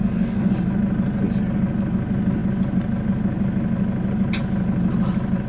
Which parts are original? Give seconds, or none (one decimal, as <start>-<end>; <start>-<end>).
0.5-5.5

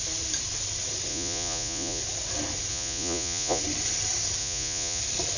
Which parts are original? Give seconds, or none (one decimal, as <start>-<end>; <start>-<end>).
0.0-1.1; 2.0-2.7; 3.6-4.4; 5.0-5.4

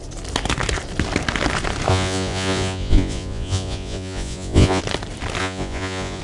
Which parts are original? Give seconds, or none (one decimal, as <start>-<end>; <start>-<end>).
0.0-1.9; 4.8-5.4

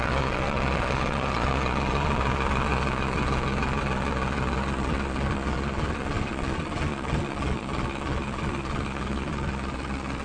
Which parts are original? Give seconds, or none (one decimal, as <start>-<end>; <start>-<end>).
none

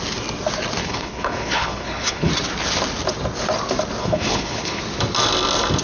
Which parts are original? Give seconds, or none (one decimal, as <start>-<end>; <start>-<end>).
0.0-0.8; 2.3-4.0; 4.8-5.8